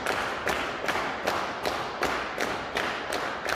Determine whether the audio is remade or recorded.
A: recorded